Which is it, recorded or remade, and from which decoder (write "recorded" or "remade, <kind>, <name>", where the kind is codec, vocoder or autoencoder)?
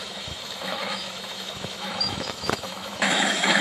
remade, autoencoder, DAC-VAE